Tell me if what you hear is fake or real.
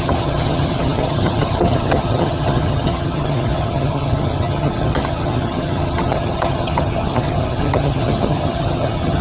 fake